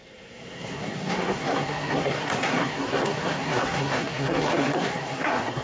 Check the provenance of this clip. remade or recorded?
remade